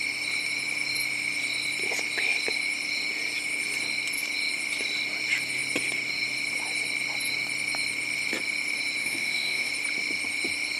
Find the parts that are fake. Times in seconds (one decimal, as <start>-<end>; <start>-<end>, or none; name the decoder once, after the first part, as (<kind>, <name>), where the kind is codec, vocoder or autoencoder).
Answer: 9.0-9.7 (autoencoder, DAC-VAE)